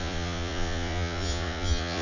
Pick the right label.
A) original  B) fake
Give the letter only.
B